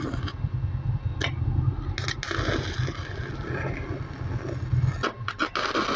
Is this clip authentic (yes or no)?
yes